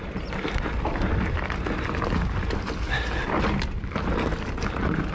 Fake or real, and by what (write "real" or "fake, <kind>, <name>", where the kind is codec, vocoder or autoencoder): real